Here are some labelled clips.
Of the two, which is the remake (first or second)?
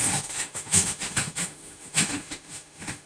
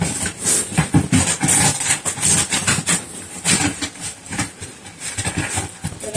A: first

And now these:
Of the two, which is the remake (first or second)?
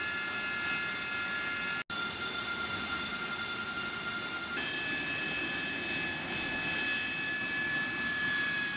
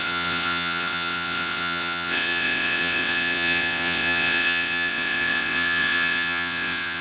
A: second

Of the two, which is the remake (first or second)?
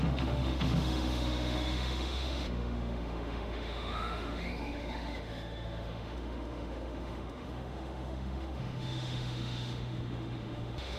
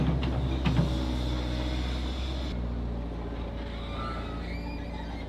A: first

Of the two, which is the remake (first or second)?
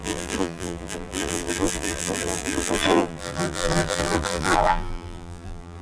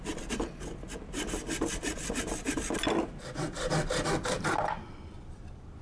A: first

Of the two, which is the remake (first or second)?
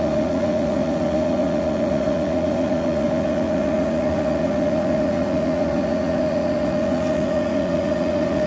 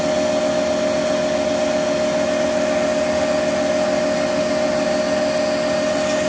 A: first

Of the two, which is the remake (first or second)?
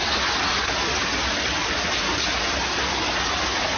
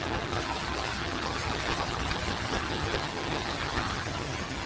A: second